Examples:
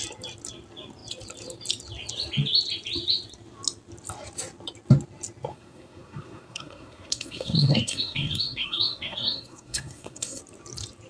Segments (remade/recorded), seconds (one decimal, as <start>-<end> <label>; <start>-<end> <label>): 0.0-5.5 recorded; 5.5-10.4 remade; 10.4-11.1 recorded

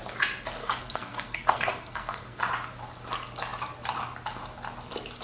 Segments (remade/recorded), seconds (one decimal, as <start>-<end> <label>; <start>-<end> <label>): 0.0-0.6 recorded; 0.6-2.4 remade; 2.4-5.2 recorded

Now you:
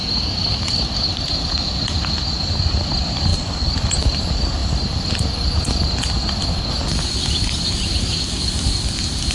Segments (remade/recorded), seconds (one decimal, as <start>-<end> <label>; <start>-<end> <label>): 0.0-9.3 recorded

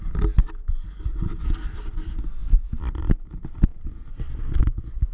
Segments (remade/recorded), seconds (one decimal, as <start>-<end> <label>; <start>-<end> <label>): 0.0-5.1 recorded

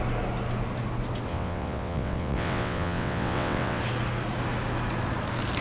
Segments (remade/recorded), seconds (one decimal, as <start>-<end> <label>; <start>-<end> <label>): 0.0-1.3 recorded; 1.3-3.8 remade; 3.8-5.6 recorded